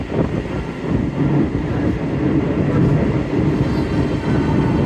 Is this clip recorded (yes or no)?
yes